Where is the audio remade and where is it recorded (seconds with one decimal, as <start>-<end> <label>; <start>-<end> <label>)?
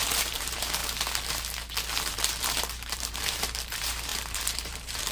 0.0-0.8 remade; 0.8-2.1 recorded; 2.1-5.1 remade